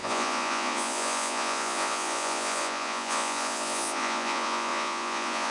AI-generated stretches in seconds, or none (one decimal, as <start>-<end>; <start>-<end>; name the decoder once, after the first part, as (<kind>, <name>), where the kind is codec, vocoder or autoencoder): 0.0-5.5 (vocoder, Vocos)